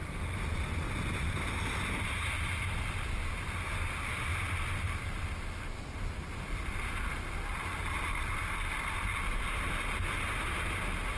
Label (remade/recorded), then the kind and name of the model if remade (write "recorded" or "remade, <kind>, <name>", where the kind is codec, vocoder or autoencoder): recorded